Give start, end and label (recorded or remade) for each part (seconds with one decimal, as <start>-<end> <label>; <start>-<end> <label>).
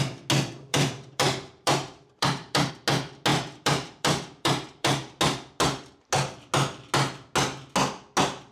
0.0-0.7 recorded; 0.7-2.7 remade; 2.7-3.3 recorded; 3.3-5.2 remade; 5.2-8.5 recorded